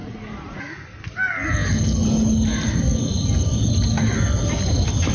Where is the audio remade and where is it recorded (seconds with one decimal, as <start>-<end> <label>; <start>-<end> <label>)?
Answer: 0.0-0.6 remade; 0.6-5.1 recorded